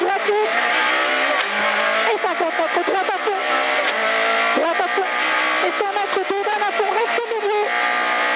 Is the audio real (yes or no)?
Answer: yes